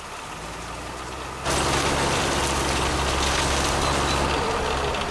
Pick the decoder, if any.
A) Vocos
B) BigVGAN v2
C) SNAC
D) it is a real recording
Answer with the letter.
D